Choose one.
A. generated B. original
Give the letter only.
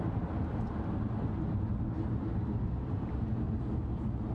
B